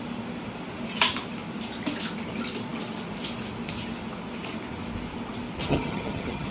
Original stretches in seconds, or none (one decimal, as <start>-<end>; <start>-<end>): 0.0-5.6